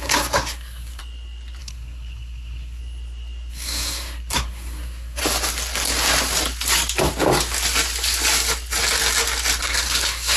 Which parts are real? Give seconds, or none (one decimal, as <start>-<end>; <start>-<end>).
1.0-1.6; 2.8-3.5; 5.2-9.6